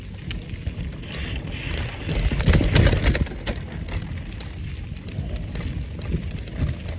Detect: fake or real real